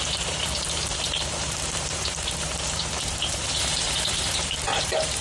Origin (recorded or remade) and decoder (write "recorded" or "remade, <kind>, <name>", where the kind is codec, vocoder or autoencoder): remade, vocoder, BigVGAN v2